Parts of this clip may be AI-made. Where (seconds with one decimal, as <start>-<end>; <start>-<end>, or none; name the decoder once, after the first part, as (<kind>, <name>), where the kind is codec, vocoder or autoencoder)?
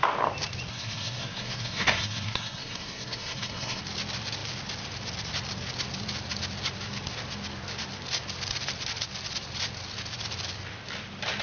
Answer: 0.7-3.8 (codec, SNAC)